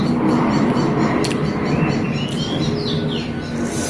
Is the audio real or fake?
real